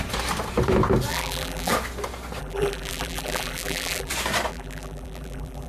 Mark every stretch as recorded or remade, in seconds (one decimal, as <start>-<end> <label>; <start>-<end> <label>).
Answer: 0.0-1.1 recorded; 1.1-1.7 remade; 1.7-2.4 recorded; 2.4-4.1 remade; 4.1-4.5 recorded; 4.5-5.7 remade